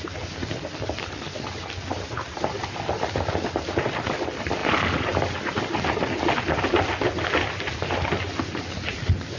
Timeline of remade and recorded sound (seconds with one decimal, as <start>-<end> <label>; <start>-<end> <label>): 0.0-4.6 remade; 4.6-8.7 recorded; 8.7-9.4 remade